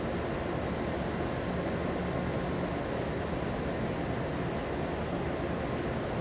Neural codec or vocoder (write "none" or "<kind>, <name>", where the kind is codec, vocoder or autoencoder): none